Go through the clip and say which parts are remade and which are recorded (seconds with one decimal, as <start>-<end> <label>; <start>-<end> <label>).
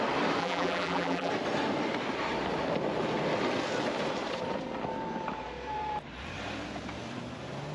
0.0-0.4 recorded; 0.4-1.3 remade; 1.3-7.7 recorded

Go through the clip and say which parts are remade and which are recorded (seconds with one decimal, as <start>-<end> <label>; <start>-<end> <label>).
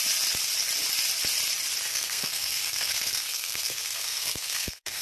0.0-1.9 recorded; 1.9-5.0 remade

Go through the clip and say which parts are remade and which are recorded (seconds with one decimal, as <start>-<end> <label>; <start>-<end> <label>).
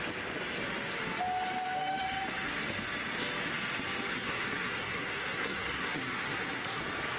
0.0-4.1 recorded; 4.1-6.8 remade; 6.8-7.2 recorded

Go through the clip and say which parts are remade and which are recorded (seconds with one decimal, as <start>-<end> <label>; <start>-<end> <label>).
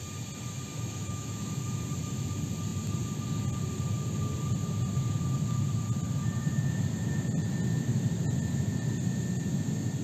0.0-0.7 recorded; 0.7-1.6 remade; 1.6-10.0 recorded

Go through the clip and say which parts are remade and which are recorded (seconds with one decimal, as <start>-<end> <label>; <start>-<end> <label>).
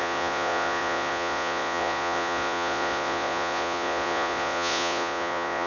0.0-5.7 remade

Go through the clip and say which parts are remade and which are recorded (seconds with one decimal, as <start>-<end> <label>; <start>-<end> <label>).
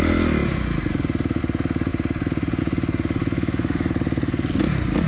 0.0-3.2 recorded; 3.2-3.9 remade; 3.9-5.1 recorded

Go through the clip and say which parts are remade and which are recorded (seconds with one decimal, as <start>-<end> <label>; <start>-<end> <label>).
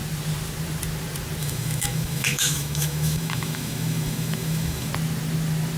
0.0-1.4 recorded; 1.4-4.9 remade; 4.9-5.8 recorded